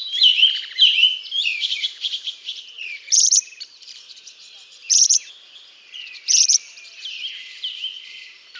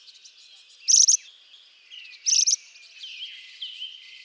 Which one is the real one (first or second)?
second